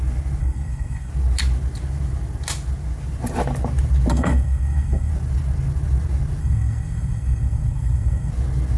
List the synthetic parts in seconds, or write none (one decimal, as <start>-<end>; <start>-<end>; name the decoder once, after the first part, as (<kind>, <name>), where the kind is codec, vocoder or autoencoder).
0.4-1.1 (codec, SNAC); 4.1-5.1; 6.4-8.3